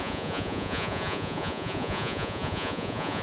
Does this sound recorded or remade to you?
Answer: remade